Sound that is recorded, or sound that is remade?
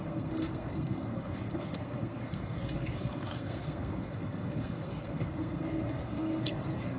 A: remade